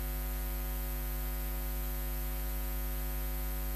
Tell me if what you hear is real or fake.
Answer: real